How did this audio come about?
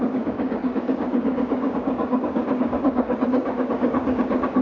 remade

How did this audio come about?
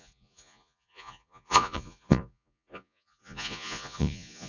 remade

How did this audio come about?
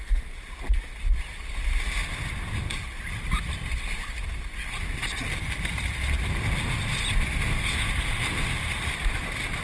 recorded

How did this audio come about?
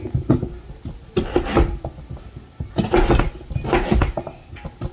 recorded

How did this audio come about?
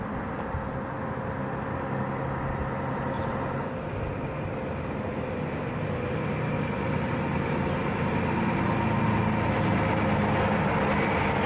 recorded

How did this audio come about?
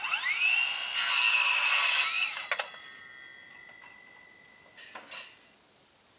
recorded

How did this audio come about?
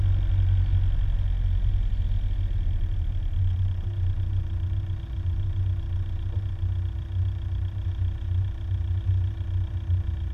recorded